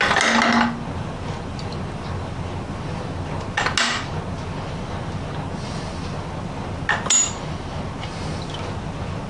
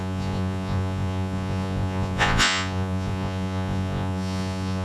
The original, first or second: first